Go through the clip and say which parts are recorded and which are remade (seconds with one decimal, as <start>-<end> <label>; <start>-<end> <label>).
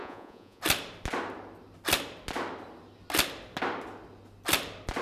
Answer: 0.0-0.6 remade; 0.6-5.0 recorded